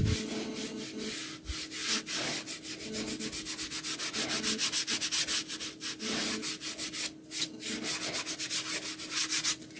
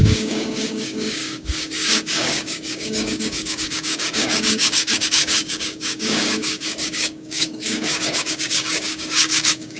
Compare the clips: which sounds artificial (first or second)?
second